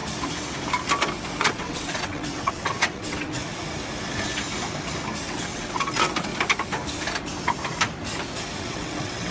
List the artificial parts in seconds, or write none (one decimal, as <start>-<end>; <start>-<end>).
1.4-3.4; 5.2-6.3; 8.6-9.3